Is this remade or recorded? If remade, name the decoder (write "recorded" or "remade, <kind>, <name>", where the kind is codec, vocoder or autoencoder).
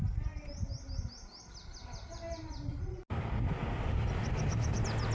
recorded